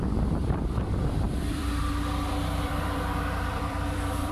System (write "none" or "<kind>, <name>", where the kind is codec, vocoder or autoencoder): vocoder, BigVGAN v2